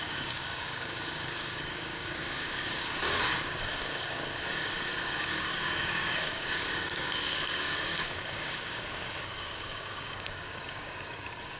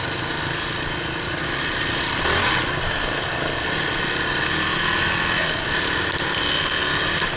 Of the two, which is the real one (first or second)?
second